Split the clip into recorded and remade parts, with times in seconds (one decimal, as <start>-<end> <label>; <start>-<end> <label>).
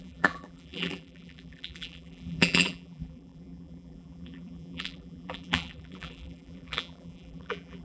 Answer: 0.0-7.8 remade